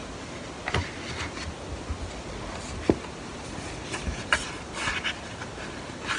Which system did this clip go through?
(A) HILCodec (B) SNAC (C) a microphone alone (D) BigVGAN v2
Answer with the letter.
C